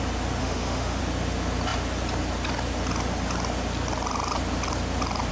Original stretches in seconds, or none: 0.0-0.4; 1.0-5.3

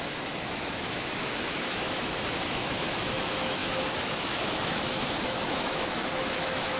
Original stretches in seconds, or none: none

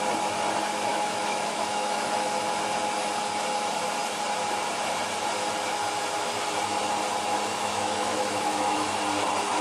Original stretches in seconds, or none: 0.0-0.9; 2.4-7.5; 8.9-9.6

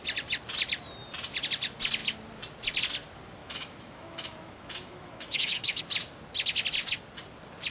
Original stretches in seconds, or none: 0.0-3.4; 5.8-7.7

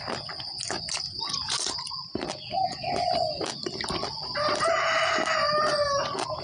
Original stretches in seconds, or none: 0.0-6.4